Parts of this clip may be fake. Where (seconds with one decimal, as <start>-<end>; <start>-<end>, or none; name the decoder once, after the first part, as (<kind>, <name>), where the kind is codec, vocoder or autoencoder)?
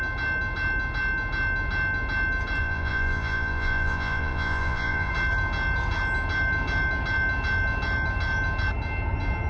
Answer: 2.6-5.1 (vocoder, Vocos)